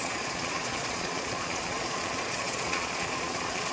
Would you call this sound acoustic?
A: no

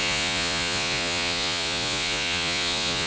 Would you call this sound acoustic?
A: no